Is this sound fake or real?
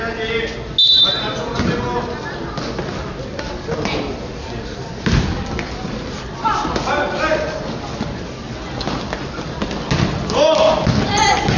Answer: real